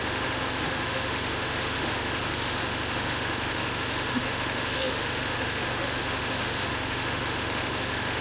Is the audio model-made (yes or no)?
yes